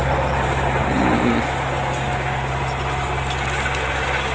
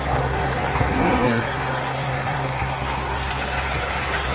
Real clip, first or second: first